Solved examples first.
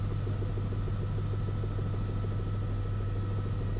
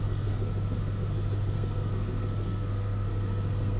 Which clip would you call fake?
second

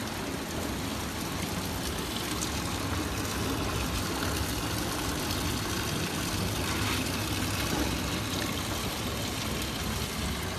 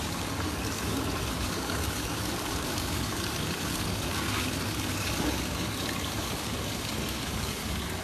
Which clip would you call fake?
second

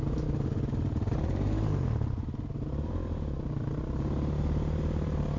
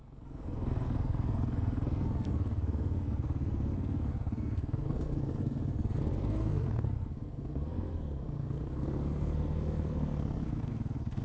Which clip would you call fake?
second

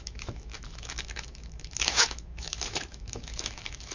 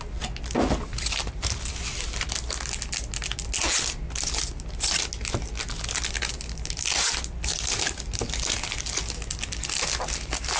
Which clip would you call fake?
first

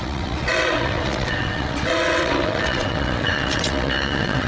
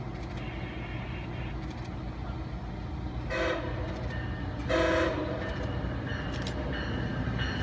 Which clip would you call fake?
first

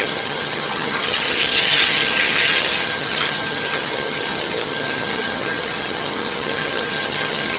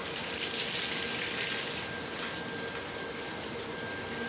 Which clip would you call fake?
first